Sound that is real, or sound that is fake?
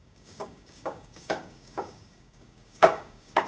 fake